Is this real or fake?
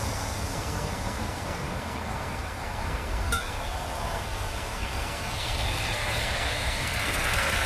fake